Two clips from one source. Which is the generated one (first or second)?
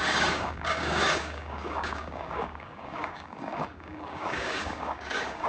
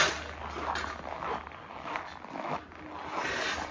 first